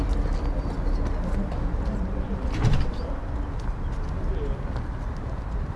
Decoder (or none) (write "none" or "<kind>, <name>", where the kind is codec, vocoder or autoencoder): none